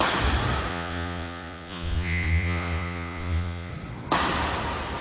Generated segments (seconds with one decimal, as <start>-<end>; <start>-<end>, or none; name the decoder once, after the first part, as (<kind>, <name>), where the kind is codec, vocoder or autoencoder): 0.7-3.7 (vocoder, Vocos)